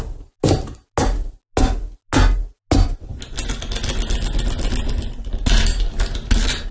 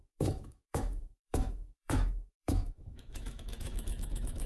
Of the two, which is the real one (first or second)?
first